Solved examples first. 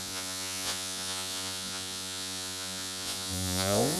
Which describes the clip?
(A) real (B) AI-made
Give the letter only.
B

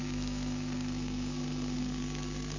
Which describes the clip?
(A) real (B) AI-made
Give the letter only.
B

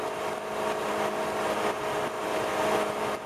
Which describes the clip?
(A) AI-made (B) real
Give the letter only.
B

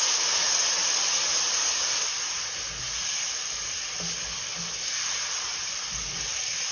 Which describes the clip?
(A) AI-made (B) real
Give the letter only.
B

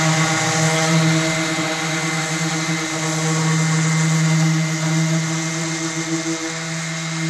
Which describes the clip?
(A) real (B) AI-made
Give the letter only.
A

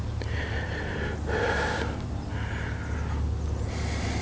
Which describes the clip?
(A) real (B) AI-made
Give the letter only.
A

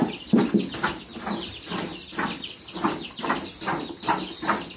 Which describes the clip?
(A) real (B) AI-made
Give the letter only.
A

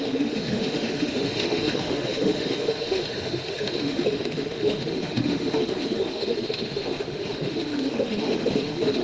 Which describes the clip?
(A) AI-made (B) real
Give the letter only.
A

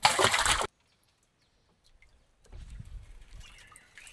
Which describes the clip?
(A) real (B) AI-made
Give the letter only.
A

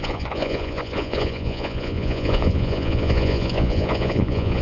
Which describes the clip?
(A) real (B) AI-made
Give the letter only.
B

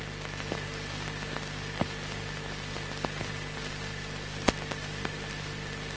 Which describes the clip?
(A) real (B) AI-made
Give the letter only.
A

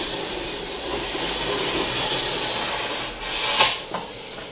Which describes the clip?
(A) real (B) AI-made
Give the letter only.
A